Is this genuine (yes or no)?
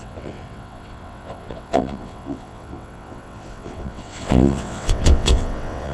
no